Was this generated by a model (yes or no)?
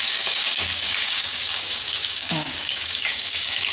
yes